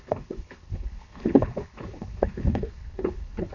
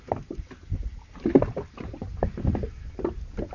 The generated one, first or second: first